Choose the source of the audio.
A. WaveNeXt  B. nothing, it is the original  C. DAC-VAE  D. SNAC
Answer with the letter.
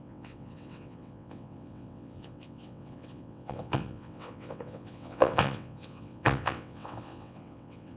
A